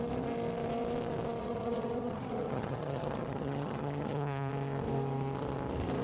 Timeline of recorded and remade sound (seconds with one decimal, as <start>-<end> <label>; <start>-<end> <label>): 0.0-1.4 recorded; 1.4-4.5 remade; 4.5-6.0 recorded